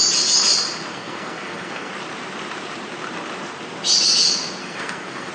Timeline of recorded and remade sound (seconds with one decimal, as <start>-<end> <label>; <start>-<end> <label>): 0.0-0.9 recorded; 0.9-1.9 remade; 1.9-4.6 recorded; 4.6-5.3 remade